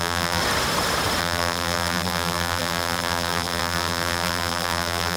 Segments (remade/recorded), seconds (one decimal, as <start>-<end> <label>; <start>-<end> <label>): 0.0-0.4 remade; 0.4-1.2 recorded; 1.2-5.2 remade